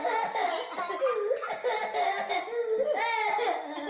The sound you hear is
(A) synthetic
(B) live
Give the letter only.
B